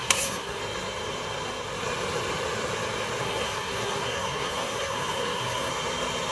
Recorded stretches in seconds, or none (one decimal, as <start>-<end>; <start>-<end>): 0.6-3.2; 5.7-6.3